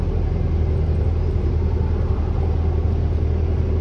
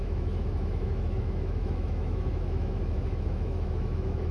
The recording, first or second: first